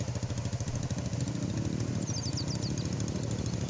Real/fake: real